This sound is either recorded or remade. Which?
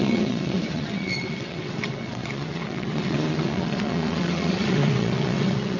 remade